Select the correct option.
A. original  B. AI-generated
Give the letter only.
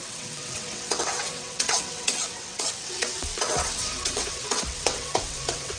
B